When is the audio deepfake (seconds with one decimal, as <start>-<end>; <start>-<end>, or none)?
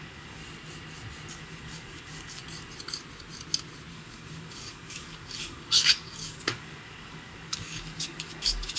0.0-0.4; 1.3-2.4; 3.9-8.8